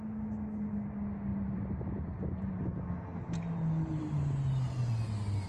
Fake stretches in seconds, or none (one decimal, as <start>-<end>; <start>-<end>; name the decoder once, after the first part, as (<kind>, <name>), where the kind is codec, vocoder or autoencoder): 1.3-2.5 (vocoder, BigVGAN v2)